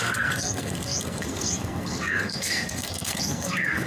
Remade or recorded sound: remade